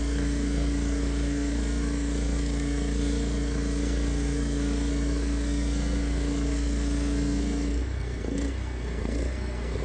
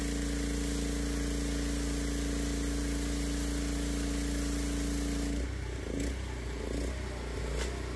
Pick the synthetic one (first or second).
first